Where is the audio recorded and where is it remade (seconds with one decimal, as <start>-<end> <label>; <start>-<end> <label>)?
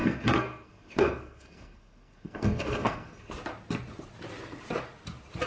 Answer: 0.0-3.3 remade; 3.3-5.5 recorded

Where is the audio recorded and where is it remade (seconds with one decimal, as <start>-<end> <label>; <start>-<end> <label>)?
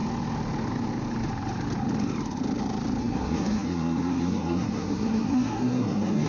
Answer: 0.0-3.0 recorded; 3.0-6.3 remade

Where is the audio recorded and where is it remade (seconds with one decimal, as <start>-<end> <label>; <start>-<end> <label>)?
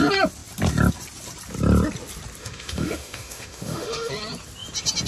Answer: 0.0-2.4 recorded; 2.4-4.1 remade; 4.1-5.1 recorded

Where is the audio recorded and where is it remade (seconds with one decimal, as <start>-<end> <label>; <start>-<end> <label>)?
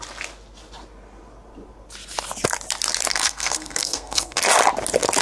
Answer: 0.0-3.1 recorded; 3.1-4.4 remade; 4.4-5.2 recorded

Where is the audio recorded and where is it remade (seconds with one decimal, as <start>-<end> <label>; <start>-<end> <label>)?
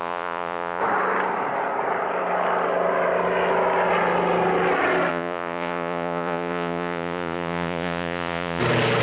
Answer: 0.0-0.8 remade; 0.8-5.1 recorded; 5.1-8.6 remade; 8.6-9.0 recorded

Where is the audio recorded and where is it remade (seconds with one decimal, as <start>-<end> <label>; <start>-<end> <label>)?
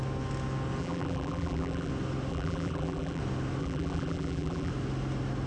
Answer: 0.0-0.8 recorded; 0.8-1.9 remade; 1.9-2.3 recorded; 2.3-3.2 remade; 3.2-3.6 recorded; 3.6-4.7 remade; 4.7-5.5 recorded